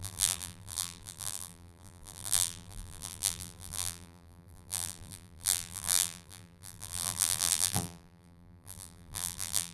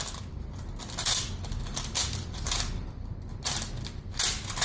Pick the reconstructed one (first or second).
first